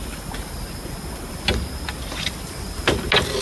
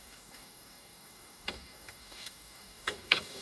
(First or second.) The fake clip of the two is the second